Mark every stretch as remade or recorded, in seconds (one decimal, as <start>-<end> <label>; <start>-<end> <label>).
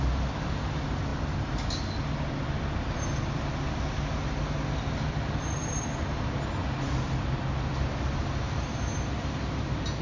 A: 0.0-10.0 recorded